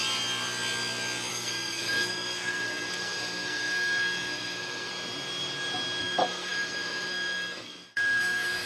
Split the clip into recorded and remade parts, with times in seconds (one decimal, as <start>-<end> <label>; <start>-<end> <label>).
0.0-1.3 recorded; 1.3-4.9 remade; 4.9-6.0 recorded; 6.0-8.7 remade